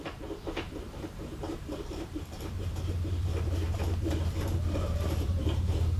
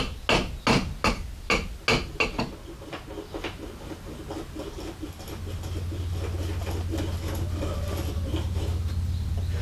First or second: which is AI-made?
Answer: first